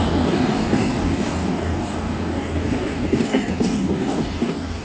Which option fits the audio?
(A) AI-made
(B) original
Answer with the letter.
A